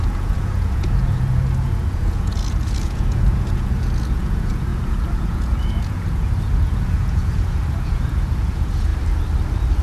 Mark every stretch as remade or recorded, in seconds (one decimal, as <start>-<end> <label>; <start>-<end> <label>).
0.0-8.9 remade; 8.9-9.8 recorded